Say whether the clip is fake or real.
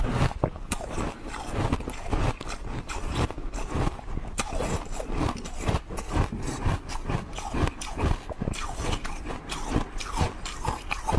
real